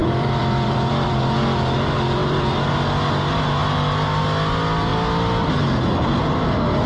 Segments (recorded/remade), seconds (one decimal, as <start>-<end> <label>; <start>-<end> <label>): 0.0-1.2 remade; 1.2-2.2 recorded; 2.2-2.7 remade; 2.7-6.9 recorded